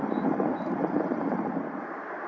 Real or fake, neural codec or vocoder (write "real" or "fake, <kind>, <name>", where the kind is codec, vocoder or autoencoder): fake, vocoder, BigVGAN v2